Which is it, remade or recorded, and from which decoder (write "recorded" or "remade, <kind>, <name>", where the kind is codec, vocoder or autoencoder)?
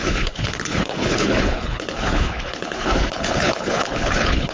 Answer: remade, codec, HILCodec